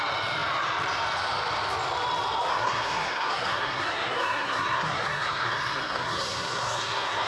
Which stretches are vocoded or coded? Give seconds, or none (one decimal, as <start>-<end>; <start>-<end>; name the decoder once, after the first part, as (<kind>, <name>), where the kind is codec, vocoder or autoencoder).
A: 2.5-7.3 (codec, SNAC)